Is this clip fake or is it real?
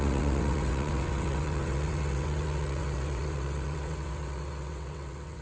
fake